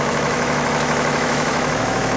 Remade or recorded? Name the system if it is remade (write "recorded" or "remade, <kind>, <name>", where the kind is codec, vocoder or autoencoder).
remade, autoencoder, DAC-VAE